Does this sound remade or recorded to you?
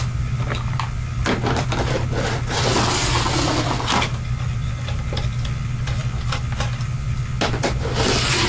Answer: recorded